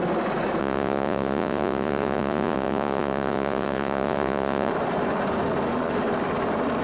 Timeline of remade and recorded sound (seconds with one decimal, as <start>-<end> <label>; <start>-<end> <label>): 0.0-0.6 recorded; 0.6-4.7 remade; 4.7-6.8 recorded